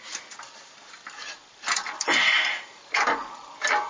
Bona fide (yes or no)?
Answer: yes